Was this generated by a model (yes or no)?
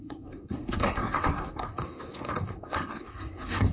yes